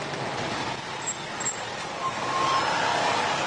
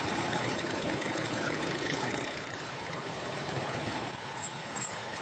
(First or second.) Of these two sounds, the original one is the first